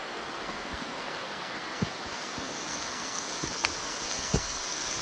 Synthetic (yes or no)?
yes